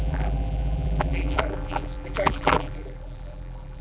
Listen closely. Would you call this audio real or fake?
fake